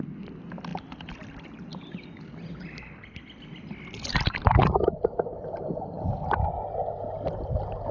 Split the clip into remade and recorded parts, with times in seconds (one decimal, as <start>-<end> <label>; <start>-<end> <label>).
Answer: 0.0-7.9 recorded